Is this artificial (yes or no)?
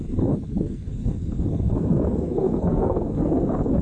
yes